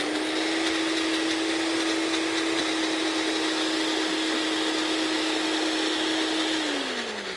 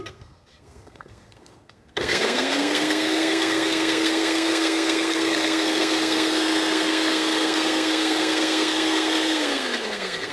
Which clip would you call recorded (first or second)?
first